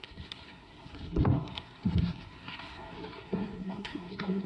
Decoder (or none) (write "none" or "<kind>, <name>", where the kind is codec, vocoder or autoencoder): codec, SNAC